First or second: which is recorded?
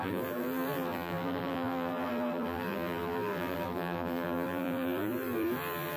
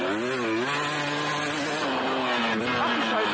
second